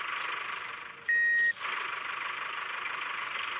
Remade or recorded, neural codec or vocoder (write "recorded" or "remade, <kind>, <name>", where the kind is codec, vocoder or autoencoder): recorded